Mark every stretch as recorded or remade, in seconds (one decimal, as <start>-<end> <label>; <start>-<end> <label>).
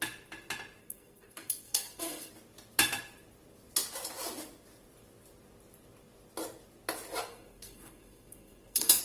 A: 0.0-0.8 recorded; 0.8-2.3 remade; 2.3-7.3 recorded; 7.3-9.0 remade